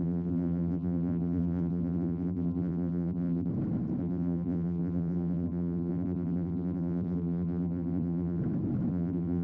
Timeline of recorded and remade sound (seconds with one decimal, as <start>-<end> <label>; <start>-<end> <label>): 0.0-3.5 remade; 3.5-4.0 recorded; 4.0-8.4 remade; 8.4-8.9 recorded; 8.9-9.4 remade